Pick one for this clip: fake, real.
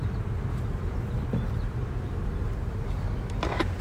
real